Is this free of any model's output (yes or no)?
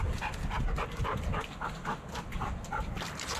yes